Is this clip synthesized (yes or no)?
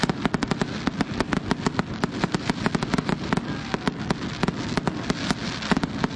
no